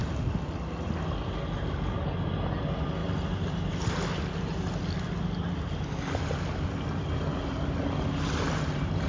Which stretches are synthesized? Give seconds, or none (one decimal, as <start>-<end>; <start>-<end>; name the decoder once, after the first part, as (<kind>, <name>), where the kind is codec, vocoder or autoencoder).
none